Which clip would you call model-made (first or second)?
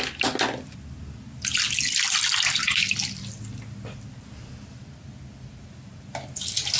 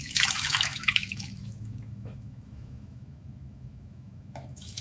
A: second